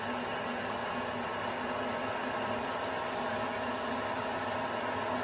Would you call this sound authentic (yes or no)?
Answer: yes